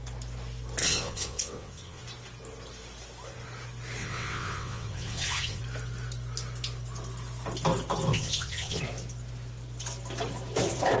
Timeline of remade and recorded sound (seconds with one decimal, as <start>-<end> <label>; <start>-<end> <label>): 0.0-0.8 recorded; 0.8-2.0 remade; 2.0-4.0 recorded; 4.0-5.6 remade; 5.6-8.1 recorded; 8.1-8.8 remade; 8.8-11.0 recorded